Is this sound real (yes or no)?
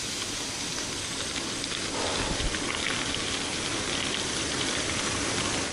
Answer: yes